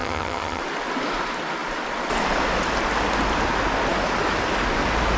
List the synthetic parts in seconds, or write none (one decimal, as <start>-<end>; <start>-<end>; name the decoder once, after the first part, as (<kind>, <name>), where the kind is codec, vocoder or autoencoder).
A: 0.0-0.6 (vocoder, HiFi-GAN)